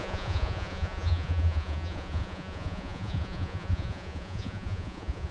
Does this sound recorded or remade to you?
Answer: remade